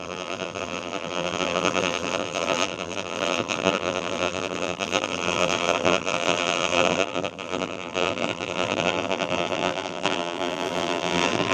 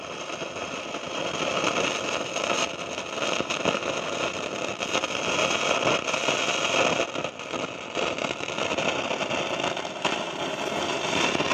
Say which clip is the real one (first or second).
second